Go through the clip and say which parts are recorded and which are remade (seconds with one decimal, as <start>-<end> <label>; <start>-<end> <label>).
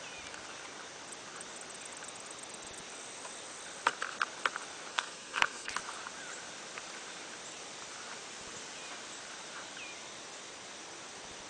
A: 0.0-4.9 recorded; 4.9-5.7 remade; 5.7-11.5 recorded